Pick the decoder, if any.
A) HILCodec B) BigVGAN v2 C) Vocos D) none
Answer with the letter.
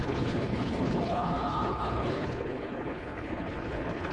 A